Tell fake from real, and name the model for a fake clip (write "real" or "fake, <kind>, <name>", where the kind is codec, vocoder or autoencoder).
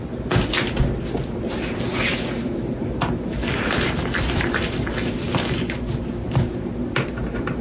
real